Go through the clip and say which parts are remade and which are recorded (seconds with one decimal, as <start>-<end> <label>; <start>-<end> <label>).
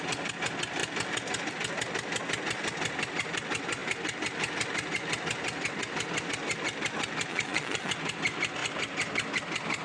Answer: 0.0-7.3 recorded; 7.3-7.9 remade; 7.9-9.8 recorded